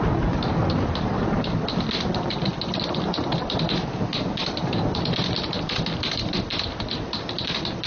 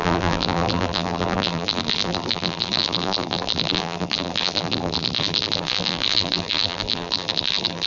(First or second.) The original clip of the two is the first